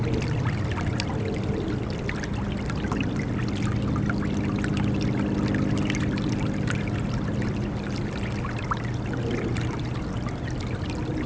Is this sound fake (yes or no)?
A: no